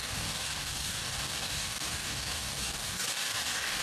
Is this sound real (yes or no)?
no